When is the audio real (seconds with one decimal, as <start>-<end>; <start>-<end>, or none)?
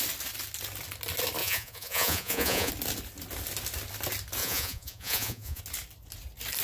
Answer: 0.0-1.4; 2.7-4.4; 5.6-6.6